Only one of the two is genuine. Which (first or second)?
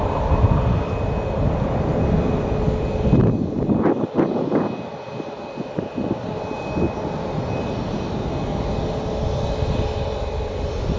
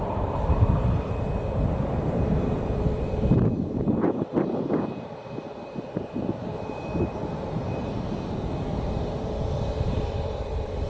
first